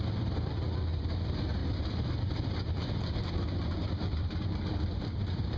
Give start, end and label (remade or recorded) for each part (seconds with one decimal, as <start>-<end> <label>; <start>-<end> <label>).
0.0-5.6 remade